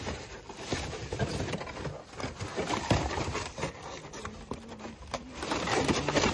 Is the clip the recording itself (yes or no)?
yes